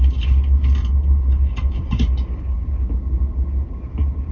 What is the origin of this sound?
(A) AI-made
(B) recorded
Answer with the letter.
B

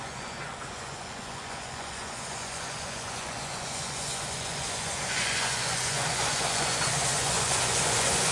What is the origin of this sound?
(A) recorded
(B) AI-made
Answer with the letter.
B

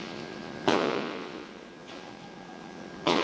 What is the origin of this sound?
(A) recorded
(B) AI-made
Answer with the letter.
B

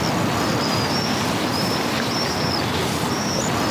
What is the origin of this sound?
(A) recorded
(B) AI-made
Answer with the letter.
A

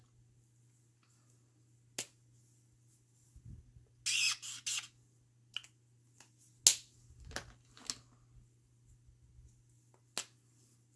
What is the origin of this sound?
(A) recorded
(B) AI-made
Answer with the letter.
A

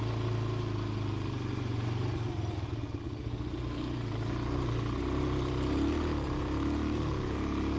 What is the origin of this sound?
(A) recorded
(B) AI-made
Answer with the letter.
A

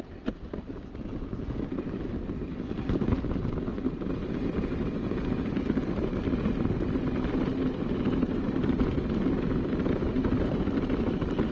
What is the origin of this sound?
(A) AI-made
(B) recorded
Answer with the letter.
B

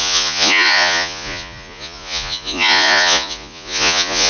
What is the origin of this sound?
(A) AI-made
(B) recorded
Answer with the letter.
A